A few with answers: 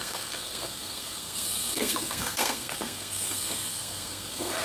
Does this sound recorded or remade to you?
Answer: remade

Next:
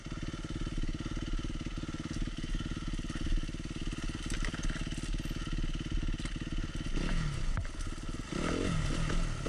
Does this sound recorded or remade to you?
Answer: recorded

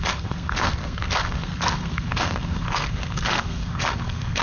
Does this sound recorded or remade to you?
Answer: remade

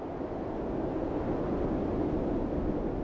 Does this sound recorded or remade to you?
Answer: recorded